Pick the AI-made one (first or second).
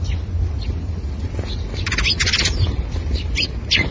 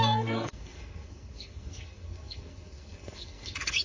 second